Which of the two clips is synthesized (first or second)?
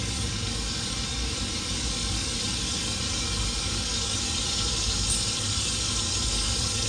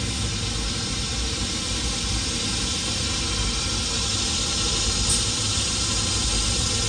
first